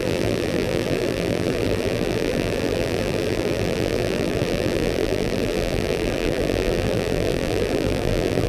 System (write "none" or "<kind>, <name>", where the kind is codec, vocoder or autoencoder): vocoder, BigVGAN v2